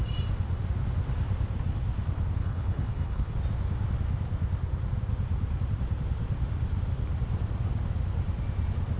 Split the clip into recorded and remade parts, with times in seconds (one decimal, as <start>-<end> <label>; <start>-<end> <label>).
0.0-2.4 recorded; 2.4-3.3 remade; 3.3-9.0 recorded